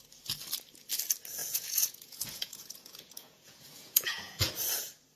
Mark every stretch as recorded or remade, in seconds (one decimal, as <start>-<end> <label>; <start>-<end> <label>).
0.0-1.4 recorded; 1.4-4.5 remade; 4.5-5.2 recorded